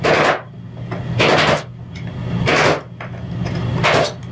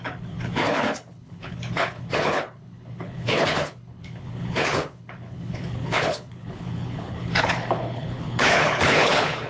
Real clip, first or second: first